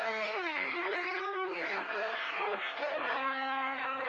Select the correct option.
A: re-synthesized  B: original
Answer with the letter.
A